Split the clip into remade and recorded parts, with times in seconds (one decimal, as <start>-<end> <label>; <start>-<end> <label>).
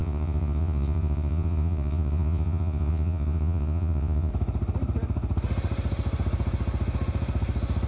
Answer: 0.0-4.3 remade; 4.3-7.9 recorded